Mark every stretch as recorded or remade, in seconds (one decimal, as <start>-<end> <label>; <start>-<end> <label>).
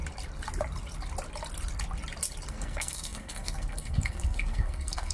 0.0-2.5 recorded; 2.5-5.1 remade